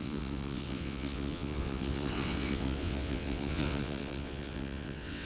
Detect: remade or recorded remade